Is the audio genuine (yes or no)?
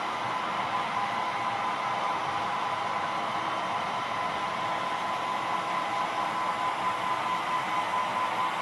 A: yes